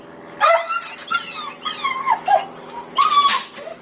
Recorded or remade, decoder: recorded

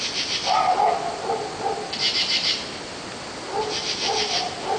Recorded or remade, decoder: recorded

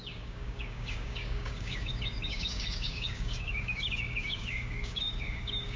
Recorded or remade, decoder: remade, codec, DAC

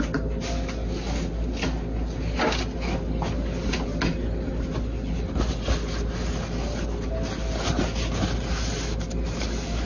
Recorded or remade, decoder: recorded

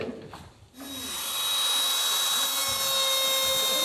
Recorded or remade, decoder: recorded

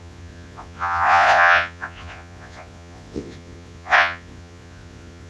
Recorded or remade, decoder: remade, vocoder, Vocos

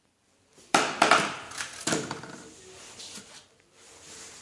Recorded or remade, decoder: remade, vocoder, BigVGAN v2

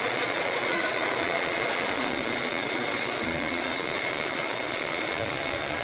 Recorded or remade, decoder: remade, vocoder, Vocos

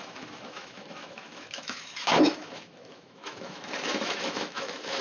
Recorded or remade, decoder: remade, autoencoder, DAC-VAE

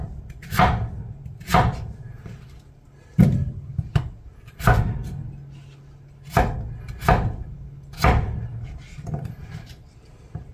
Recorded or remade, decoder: recorded